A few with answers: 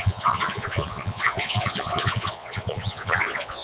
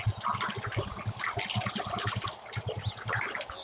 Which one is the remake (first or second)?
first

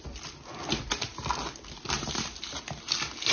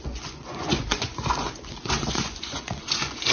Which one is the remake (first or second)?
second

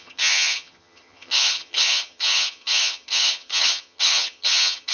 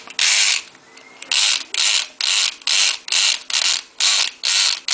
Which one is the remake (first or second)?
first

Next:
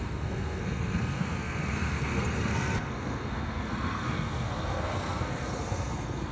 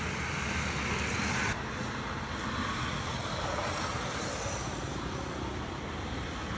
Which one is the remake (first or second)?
first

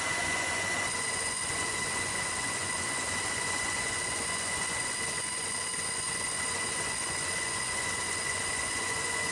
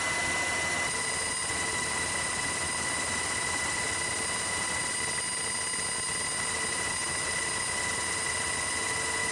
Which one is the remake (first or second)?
first